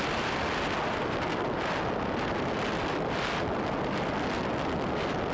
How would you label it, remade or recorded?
recorded